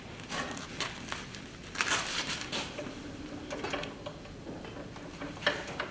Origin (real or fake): real